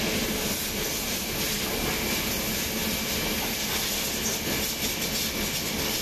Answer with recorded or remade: recorded